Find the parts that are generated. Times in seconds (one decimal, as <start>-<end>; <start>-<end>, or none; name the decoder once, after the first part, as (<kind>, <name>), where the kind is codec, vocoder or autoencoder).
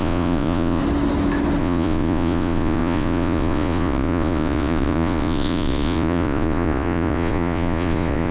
0.0-0.8 (vocoder, Vocos); 1.6-8.3